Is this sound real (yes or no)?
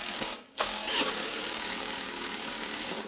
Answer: no